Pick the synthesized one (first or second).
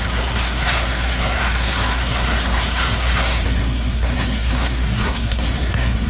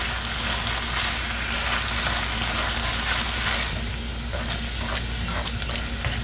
first